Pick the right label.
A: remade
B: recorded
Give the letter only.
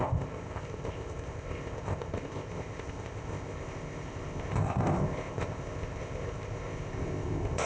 A